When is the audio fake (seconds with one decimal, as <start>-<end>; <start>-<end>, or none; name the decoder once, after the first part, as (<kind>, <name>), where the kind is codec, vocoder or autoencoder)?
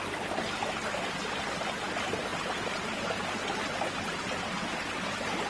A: none